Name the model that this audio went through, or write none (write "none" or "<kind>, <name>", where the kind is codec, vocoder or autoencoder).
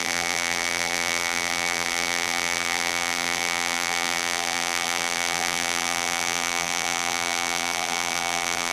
vocoder, BigVGAN v2